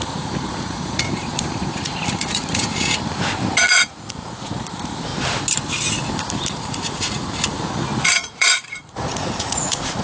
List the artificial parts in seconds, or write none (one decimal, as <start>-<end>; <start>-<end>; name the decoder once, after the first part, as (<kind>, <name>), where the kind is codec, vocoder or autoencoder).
0.0-2.7 (vocoder, Vocos); 3.7-5.1; 6.5-7.2; 8.0-10.0